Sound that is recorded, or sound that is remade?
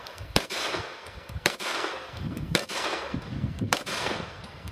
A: remade